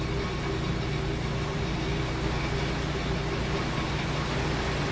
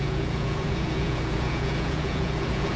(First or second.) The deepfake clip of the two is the second